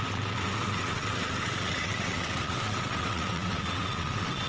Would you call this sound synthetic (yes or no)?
yes